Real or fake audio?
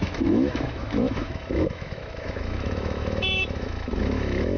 fake